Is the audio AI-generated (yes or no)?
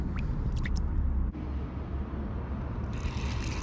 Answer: no